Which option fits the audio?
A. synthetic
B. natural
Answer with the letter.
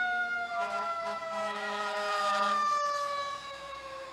A